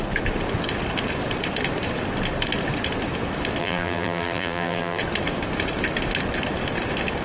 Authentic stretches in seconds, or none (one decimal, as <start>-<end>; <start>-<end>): 0.0-3.6; 5.0-7.2